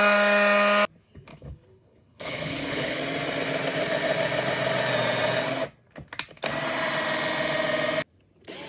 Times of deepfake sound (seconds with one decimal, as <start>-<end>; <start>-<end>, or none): 1.3-3.0